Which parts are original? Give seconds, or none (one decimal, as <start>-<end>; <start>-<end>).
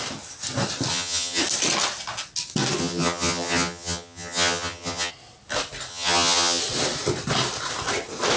0.0-0.9; 1.4-2.8; 5.1-5.9; 6.6-8.4